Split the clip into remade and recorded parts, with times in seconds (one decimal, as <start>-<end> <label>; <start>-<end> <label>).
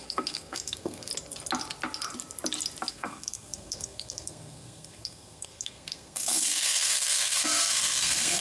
0.0-1.1 remade; 1.1-2.9 recorded; 2.9-8.4 remade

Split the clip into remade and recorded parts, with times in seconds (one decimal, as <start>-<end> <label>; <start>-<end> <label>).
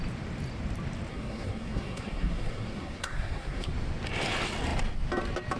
0.0-1.1 recorded; 1.1-3.7 remade; 3.7-5.6 recorded